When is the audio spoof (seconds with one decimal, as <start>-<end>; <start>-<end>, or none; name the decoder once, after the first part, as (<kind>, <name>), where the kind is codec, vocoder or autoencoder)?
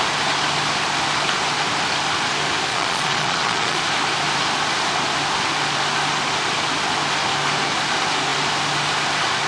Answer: 2.7-3.8 (vocoder, Vocos)